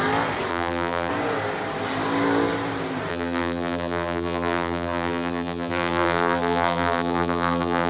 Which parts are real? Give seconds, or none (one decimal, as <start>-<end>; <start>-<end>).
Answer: 0.0-0.5; 1.1-3.1